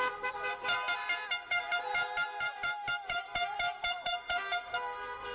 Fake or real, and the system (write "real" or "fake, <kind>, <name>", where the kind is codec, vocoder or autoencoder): real